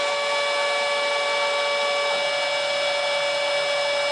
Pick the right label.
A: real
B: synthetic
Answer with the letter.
A